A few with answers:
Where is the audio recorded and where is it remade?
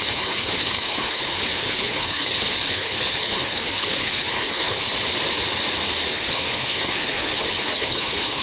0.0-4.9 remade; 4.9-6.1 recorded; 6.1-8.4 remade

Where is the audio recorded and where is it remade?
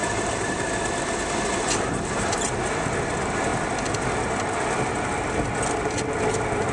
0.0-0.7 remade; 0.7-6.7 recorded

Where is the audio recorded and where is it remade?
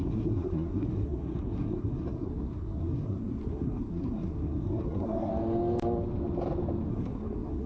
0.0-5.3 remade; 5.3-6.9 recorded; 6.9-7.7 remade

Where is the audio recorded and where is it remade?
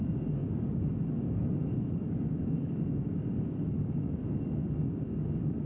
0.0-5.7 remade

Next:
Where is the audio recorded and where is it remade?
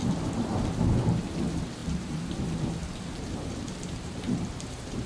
0.0-0.7 remade; 0.7-1.8 recorded; 1.8-2.4 remade; 2.4-2.8 recorded; 2.8-5.1 remade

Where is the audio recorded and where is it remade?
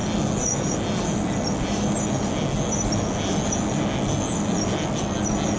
0.0-5.6 recorded